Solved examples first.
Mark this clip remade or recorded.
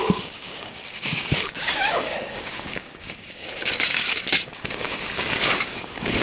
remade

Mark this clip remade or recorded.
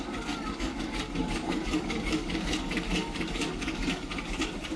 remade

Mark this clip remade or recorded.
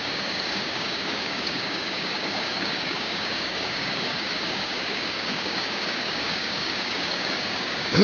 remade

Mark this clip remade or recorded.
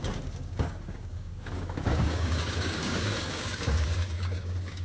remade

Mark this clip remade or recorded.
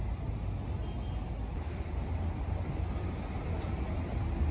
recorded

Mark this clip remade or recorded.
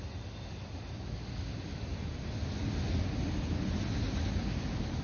recorded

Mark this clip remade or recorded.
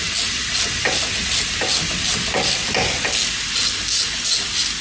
recorded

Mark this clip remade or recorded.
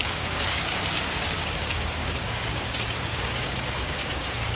remade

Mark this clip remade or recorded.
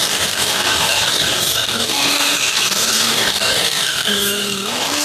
remade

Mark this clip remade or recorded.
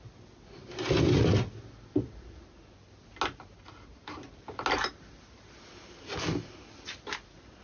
recorded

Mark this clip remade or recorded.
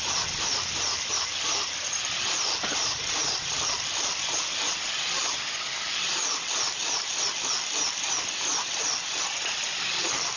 recorded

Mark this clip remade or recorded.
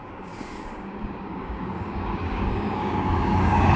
remade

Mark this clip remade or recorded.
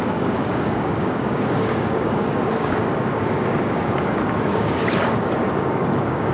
remade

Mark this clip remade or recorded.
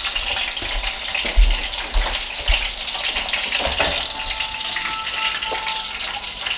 recorded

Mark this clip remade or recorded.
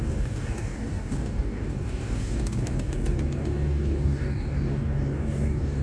remade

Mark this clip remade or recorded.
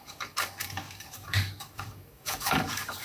remade